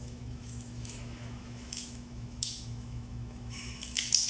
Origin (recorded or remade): remade